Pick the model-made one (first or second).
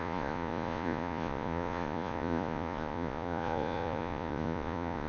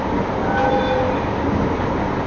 first